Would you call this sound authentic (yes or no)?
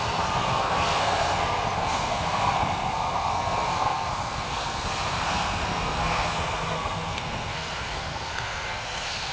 no